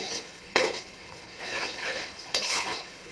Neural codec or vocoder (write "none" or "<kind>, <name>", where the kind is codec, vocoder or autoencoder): codec, HILCodec